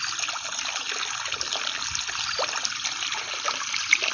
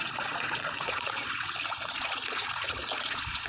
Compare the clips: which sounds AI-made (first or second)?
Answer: second